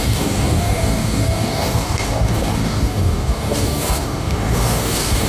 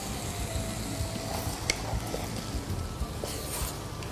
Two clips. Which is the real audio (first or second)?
second